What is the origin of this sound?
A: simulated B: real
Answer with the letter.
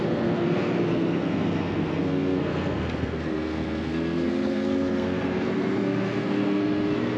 A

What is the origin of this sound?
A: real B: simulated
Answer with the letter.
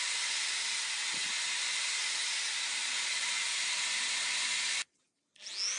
A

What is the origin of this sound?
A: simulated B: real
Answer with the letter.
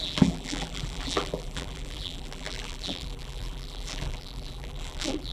A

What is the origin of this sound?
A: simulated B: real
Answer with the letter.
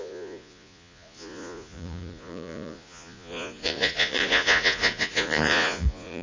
A